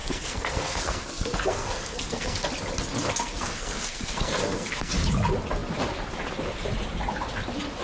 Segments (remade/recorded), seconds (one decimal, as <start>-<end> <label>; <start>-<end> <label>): 0.0-2.5 remade; 2.5-3.1 recorded; 3.1-4.9 remade; 4.9-7.8 recorded